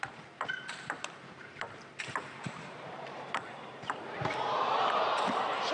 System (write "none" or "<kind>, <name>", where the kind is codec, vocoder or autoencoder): vocoder, BigVGAN v2